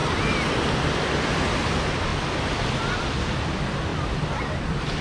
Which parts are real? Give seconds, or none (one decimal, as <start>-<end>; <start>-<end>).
0.0-5.0